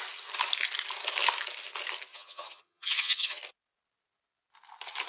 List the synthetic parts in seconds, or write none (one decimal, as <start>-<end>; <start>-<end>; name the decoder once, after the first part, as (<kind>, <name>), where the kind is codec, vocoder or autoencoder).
2.1-3.4 (vocoder, HiFi-GAN)